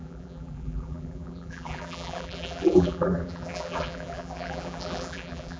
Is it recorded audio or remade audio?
remade